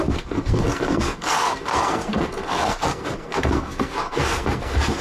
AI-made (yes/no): yes